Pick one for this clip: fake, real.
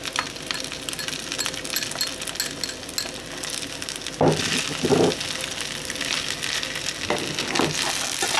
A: real